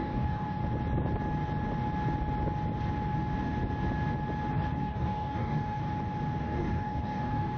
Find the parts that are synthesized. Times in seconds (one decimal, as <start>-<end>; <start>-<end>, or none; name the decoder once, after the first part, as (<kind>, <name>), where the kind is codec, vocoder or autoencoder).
0.0-0.6 (codec, DAC); 4.5-5.8; 6.4-7.6